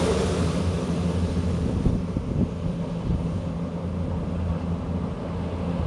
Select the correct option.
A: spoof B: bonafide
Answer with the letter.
B